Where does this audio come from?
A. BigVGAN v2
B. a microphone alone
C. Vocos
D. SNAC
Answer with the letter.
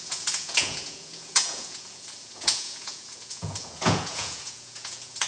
C